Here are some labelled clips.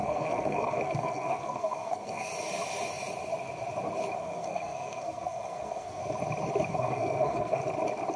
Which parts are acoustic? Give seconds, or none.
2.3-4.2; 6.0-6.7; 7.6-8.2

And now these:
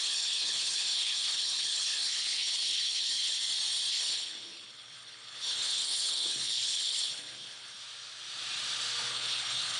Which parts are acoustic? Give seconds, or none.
3.4-3.9; 7.8-9.1